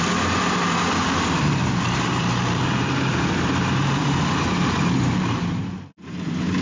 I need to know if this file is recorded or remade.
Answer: remade